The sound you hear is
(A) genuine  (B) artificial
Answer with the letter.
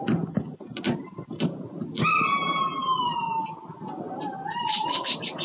A